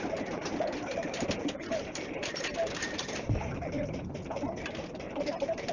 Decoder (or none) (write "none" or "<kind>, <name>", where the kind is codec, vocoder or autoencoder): vocoder, BigVGAN v2